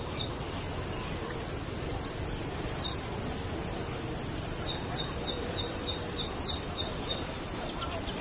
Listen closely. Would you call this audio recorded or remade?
recorded